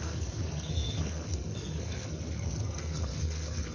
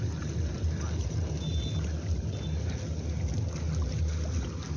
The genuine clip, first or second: second